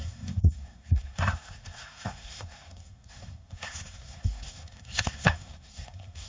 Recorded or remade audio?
remade